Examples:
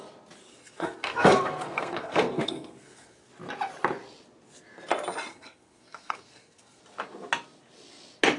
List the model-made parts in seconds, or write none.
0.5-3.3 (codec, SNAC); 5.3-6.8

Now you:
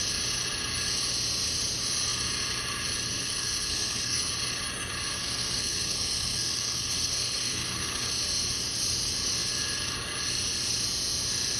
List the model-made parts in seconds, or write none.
3.1-4.3 (codec, SNAC); 5.1-8.1

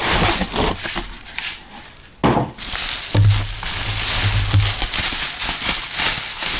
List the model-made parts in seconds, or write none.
none

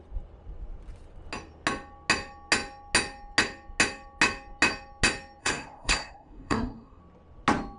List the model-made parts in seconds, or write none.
5.4-7.0 (codec, SNAC)

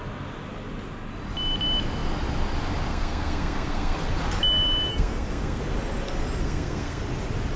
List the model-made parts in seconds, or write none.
2.9-4.1 (codec, SNAC); 4.9-5.6; 6.4-7.0

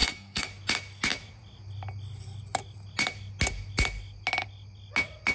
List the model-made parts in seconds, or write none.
0.0-0.5 (codec, SNAC)

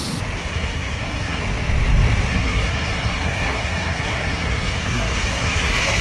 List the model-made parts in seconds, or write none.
0.4-1.4 (codec, SNAC); 2.3-6.0

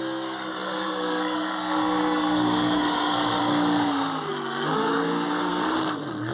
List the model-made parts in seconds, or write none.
0.0-6.3 (codec, SNAC)